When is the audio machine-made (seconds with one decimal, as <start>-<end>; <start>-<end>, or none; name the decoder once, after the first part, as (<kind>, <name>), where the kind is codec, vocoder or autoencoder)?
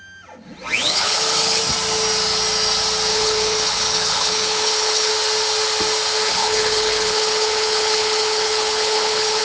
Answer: 0.8-1.6 (codec, HILCodec); 3.1-5.1; 6.3-9.4